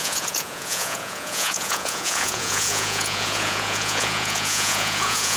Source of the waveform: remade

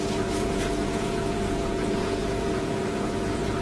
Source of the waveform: remade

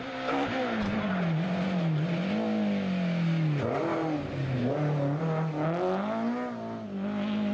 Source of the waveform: recorded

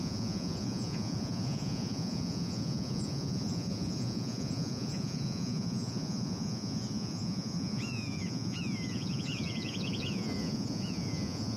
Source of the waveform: remade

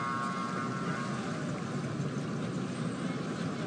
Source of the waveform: recorded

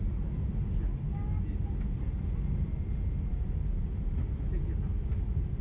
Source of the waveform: recorded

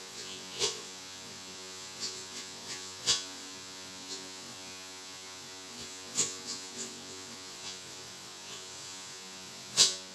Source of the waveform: remade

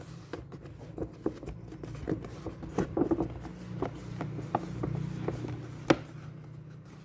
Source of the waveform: recorded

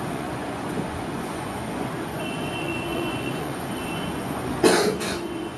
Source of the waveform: remade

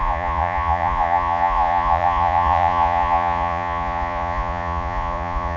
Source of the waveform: remade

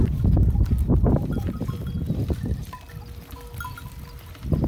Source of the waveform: recorded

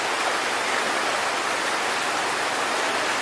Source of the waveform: recorded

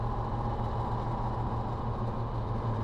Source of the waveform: recorded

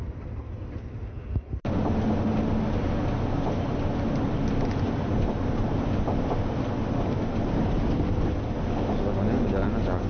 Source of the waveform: recorded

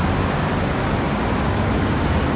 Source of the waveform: recorded